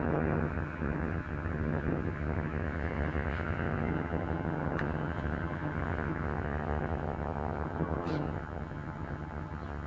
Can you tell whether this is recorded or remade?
remade